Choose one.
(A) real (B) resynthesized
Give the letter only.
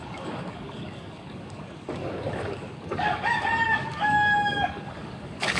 B